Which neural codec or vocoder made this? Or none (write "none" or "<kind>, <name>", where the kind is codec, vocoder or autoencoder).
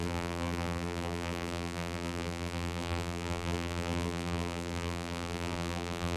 vocoder, BigVGAN v2